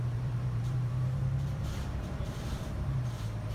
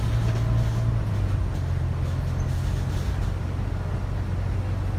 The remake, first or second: first